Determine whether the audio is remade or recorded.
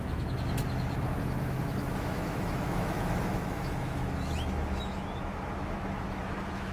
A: remade